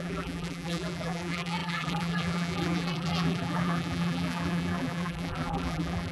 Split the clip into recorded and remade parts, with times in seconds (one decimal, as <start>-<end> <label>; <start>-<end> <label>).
0.0-6.1 remade